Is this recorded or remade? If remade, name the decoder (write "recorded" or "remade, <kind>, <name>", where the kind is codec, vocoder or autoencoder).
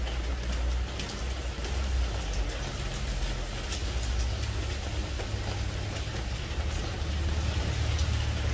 recorded